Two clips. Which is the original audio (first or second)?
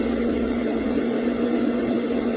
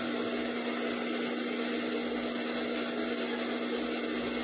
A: second